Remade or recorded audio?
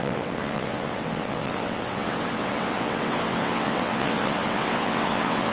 remade